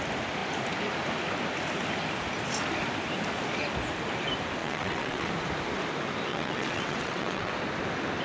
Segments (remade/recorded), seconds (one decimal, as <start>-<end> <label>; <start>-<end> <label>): 0.0-4.6 recorded; 4.6-5.3 remade; 5.3-6.3 recorded; 6.3-7.5 remade; 7.5-8.2 recorded